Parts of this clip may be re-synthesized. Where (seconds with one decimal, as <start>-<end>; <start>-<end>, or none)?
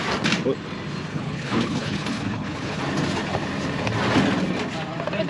1.1-2.8